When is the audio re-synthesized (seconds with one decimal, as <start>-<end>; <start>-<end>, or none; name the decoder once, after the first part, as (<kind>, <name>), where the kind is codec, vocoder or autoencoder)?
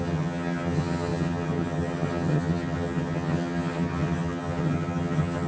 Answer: 0.0-5.5 (vocoder, HiFi-GAN)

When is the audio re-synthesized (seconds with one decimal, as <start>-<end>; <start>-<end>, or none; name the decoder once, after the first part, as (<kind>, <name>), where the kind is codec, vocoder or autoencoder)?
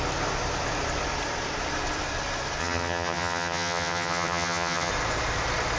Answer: 2.6-4.9 (vocoder, HiFi-GAN)